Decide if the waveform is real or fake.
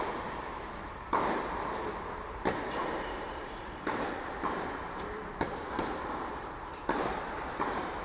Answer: fake